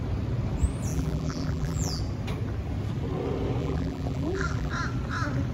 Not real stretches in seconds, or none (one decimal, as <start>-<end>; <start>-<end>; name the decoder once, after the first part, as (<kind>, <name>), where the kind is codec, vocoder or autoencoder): 0.9-2.0 (vocoder, BigVGAN v2); 3.6-4.7